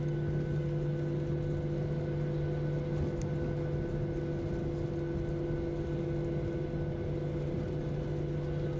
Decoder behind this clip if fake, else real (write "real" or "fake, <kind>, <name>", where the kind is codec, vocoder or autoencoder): real